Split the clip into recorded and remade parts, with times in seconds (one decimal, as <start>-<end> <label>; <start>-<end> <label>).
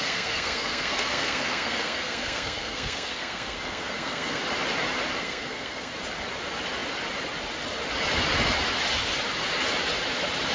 0.0-4.4 remade; 4.4-5.2 recorded; 5.2-5.9 remade; 5.9-10.5 recorded